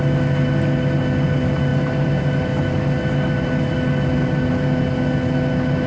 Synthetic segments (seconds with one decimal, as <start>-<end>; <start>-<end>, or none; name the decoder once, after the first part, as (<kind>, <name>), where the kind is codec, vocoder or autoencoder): none